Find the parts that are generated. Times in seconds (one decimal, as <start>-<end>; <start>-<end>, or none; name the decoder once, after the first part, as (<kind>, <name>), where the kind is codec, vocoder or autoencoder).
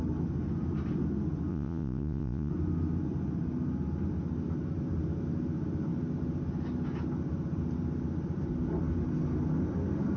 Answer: 1.5-2.5 (vocoder, Vocos)